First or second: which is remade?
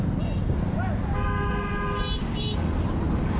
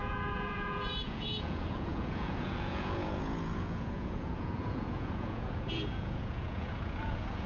second